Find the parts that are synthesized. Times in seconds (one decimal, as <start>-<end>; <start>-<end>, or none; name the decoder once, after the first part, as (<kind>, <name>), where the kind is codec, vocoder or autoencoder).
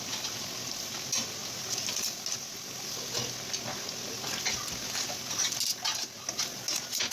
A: none